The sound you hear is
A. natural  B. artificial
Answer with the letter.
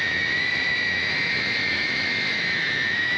B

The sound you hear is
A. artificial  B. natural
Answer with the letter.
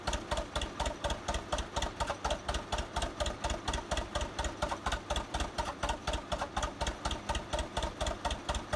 B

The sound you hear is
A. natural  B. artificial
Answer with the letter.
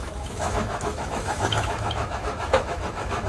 B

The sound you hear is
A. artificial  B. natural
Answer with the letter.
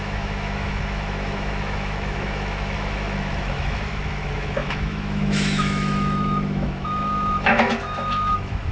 A